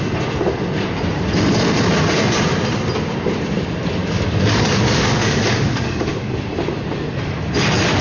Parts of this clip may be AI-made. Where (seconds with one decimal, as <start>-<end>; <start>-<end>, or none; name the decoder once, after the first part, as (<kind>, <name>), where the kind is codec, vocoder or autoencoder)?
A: 4.0-6.3 (codec, DAC)